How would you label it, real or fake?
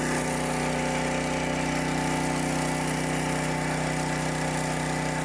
real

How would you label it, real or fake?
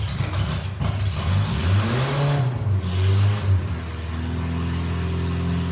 real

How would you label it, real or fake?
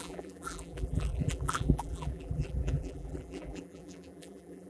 fake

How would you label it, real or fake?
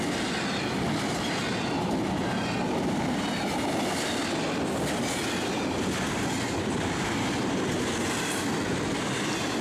real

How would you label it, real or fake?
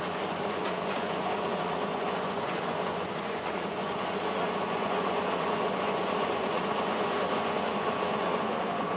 fake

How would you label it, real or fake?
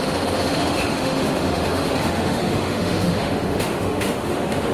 fake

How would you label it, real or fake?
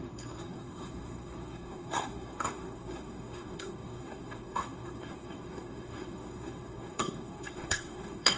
fake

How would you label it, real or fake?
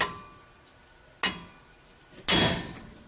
real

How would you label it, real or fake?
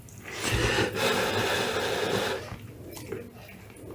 real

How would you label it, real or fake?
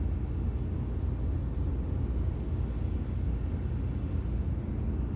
real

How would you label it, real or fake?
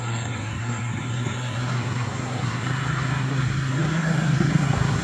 fake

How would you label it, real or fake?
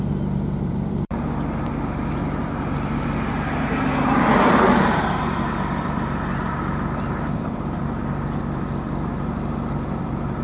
fake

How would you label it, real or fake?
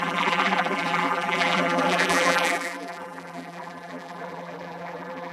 fake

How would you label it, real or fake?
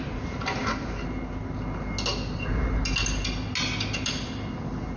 real